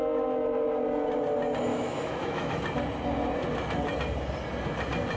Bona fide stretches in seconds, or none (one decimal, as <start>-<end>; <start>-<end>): 0.0-1.7; 2.6-5.2